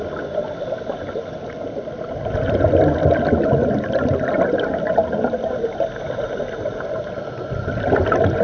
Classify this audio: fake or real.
real